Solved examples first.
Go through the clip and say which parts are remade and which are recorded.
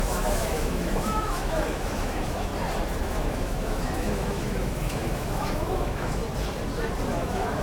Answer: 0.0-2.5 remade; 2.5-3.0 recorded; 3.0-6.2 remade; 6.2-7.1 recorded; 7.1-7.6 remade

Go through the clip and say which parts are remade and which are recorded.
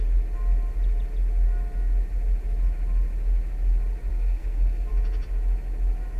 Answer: 0.0-4.1 recorded; 4.1-4.9 remade; 4.9-6.2 recorded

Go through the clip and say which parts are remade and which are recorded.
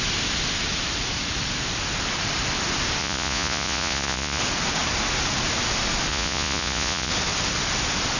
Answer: 0.0-3.0 recorded; 3.0-4.4 remade; 4.4-6.1 recorded; 6.1-7.1 remade; 7.1-8.2 recorded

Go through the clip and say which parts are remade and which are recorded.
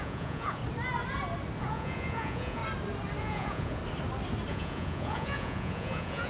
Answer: 0.0-0.6 remade; 0.6-1.6 recorded; 1.6-2.6 remade; 2.6-3.2 recorded; 3.2-3.8 remade; 3.8-4.5 recorded; 4.5-6.3 remade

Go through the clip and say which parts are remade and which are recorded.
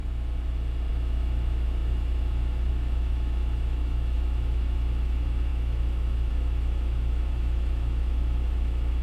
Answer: 0.0-0.9 recorded; 0.9-9.0 remade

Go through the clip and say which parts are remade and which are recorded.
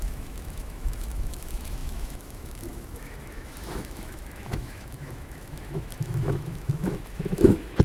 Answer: 0.0-7.8 remade